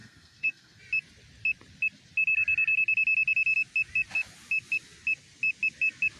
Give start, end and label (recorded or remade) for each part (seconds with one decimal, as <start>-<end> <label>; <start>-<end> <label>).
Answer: 0.0-0.8 remade; 0.8-6.2 recorded